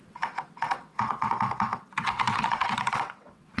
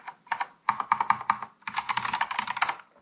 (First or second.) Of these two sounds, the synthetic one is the first